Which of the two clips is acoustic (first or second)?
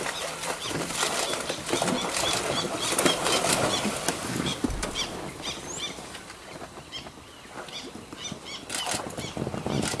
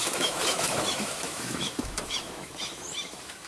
first